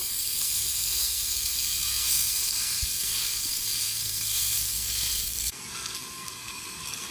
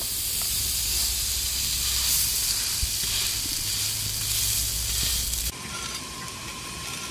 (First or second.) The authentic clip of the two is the second